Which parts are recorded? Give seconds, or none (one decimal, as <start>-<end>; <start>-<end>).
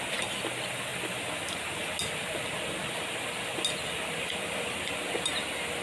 0.0-5.8